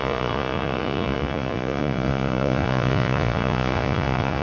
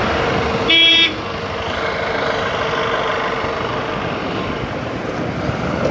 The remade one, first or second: first